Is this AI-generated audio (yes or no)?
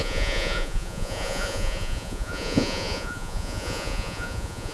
yes